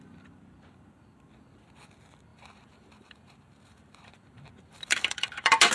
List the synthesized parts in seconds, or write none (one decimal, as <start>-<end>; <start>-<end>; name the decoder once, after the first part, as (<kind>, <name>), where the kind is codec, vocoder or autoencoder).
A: 2.3-5.7 (vocoder, BigVGAN v2)